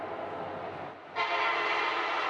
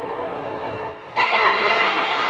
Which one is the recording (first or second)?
first